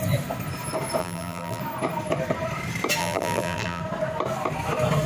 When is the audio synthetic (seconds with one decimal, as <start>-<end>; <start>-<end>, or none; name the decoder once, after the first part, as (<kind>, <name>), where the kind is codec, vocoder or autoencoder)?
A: 1.0-1.6 (vocoder, BigVGAN v2); 3.0-3.8